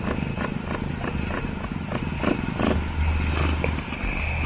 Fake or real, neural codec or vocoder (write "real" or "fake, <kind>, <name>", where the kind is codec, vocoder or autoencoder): real